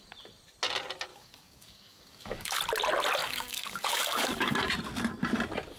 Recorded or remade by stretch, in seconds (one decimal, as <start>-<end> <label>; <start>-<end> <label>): 0.0-1.1 recorded; 1.1-2.6 remade; 2.6-3.2 recorded; 3.2-4.7 remade; 4.7-5.8 recorded